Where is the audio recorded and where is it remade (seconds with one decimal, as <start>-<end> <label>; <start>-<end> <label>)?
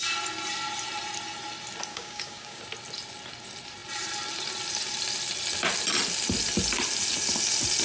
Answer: 0.0-1.9 recorded; 1.9-2.6 remade; 2.6-7.8 recorded